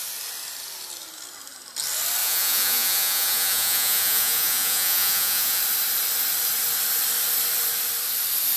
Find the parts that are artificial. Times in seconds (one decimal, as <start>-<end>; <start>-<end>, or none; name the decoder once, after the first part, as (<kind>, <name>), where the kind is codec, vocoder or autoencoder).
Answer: 2.2-5.6 (vocoder, Vocos)